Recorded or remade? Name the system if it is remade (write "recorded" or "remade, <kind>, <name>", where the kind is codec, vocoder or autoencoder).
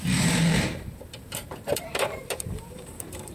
remade, vocoder, BigVGAN v2